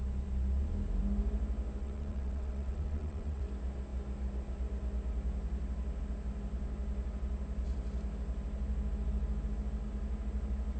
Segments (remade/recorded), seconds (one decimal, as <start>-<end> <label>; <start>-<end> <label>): 0.0-1.8 recorded; 1.8-3.4 remade; 3.4-10.8 recorded